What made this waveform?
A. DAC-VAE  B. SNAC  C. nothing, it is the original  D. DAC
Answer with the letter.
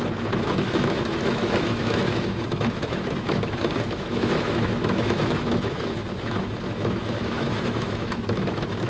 A